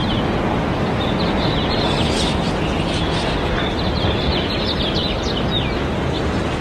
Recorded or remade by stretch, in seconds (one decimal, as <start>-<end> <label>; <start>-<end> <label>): 0.0-6.6 recorded